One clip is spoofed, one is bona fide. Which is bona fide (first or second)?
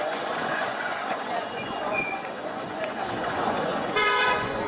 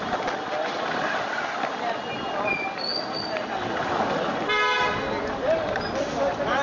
second